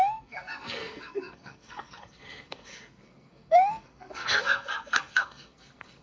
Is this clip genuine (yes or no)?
no